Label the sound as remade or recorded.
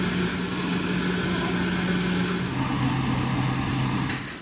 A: recorded